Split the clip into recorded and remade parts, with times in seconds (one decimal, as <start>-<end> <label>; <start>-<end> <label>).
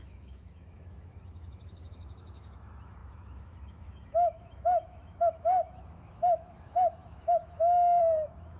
0.0-8.6 remade